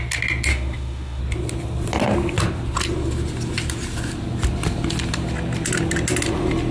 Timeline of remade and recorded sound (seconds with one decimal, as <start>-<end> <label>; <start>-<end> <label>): 0.0-0.5 recorded; 0.5-1.2 remade; 1.2-6.7 recorded